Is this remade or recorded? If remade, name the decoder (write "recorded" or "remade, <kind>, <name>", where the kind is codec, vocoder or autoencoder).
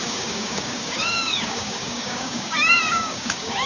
remade, codec, DAC